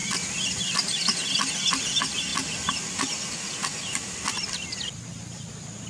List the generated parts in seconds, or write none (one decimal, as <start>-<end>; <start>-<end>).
none